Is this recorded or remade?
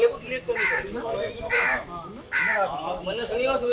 remade